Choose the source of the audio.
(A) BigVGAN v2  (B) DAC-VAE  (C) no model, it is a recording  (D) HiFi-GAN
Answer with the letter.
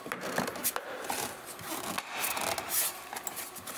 C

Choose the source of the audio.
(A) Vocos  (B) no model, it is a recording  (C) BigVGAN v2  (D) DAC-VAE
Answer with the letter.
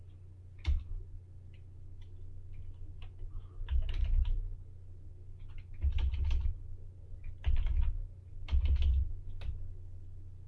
B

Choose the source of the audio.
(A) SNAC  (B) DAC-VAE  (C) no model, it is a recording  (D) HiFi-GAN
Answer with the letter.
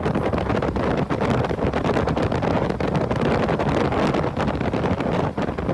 C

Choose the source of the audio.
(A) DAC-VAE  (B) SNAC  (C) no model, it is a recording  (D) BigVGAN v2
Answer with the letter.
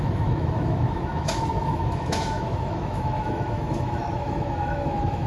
A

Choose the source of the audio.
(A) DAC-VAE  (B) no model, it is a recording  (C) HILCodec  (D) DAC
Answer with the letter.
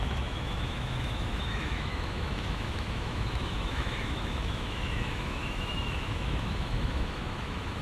A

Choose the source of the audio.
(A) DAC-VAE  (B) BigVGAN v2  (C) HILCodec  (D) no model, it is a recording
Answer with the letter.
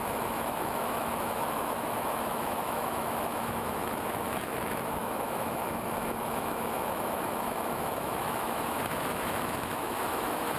A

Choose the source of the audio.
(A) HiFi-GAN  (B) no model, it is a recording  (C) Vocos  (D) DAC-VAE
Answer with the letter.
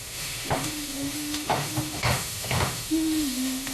D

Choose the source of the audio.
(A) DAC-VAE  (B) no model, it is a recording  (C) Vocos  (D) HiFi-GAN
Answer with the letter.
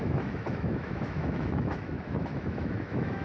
A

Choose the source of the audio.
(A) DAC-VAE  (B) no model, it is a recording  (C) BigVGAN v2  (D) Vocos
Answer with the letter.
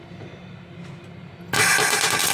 B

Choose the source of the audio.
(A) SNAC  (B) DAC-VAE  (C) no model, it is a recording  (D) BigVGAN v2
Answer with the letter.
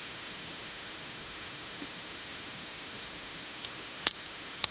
B